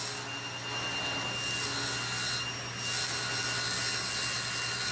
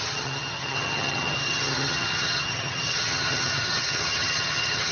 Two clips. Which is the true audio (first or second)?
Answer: first